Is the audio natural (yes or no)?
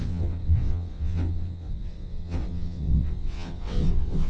no